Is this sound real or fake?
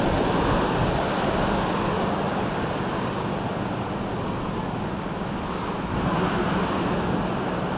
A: real